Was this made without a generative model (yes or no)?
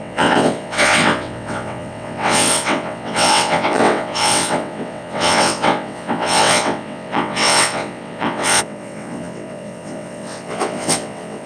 no